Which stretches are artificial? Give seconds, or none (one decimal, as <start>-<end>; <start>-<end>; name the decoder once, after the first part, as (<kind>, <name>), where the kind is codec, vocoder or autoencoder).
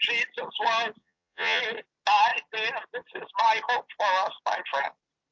1.0-1.6 (vocoder, Vocos)